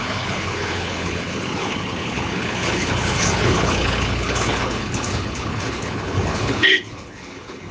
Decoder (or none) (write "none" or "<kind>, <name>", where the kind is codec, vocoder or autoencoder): codec, HILCodec